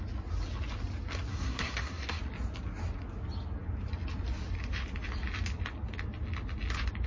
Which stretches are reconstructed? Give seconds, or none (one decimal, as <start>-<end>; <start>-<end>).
1.3-2.2